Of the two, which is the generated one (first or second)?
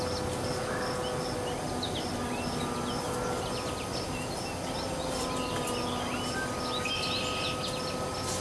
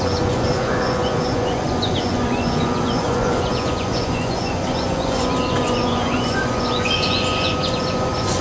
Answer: second